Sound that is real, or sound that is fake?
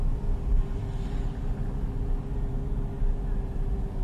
real